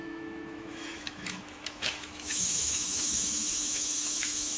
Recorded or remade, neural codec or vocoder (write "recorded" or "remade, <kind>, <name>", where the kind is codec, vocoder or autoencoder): remade, autoencoder, DAC-VAE